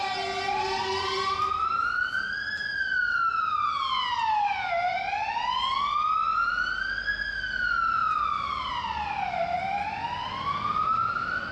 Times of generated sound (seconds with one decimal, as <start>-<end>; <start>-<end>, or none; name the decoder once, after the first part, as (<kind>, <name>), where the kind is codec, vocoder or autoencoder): none